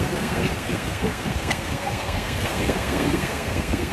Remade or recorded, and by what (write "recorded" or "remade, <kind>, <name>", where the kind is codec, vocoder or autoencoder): remade, codec, SNAC